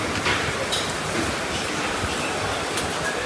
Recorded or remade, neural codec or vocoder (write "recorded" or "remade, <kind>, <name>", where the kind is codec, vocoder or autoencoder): recorded